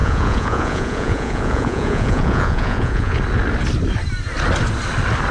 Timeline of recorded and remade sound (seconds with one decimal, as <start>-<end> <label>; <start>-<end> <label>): 0.0-3.2 remade; 3.2-5.3 recorded